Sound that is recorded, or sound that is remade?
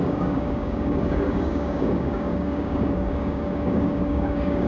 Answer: remade